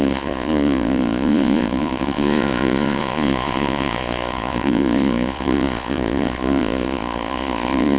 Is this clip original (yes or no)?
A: no